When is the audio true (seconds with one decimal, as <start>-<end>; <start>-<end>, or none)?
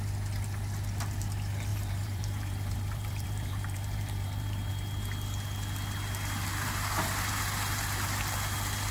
0.0-1.7; 4.7-8.9